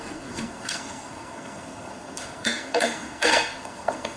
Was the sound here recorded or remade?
remade